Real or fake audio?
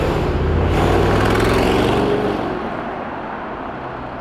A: real